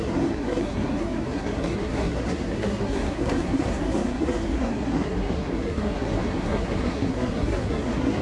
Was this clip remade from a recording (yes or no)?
yes